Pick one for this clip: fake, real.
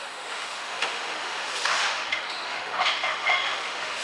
fake